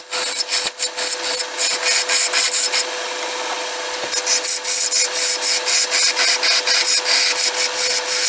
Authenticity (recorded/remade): recorded